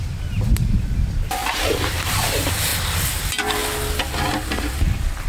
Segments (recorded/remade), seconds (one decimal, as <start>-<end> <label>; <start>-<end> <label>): 0.0-2.7 remade; 2.7-3.2 recorded; 3.2-3.6 remade; 3.6-4.6 recorded; 4.6-5.3 remade